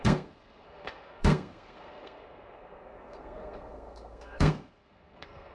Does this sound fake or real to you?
fake